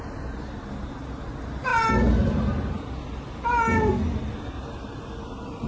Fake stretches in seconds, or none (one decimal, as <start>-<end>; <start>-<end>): none

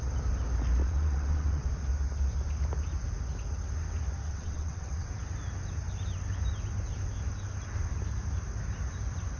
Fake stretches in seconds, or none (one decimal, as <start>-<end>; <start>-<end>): 0.8-1.7; 4.2-5.1

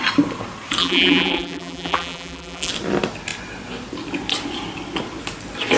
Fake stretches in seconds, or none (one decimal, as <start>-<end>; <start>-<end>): 0.8-2.7

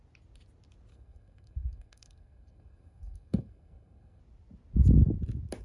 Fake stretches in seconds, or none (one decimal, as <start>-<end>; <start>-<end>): 0.9-4.2

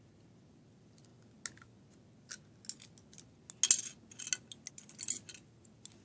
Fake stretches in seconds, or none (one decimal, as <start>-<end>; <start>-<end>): none

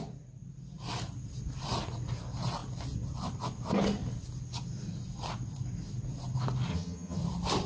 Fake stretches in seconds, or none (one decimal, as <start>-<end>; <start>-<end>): 6.7-7.2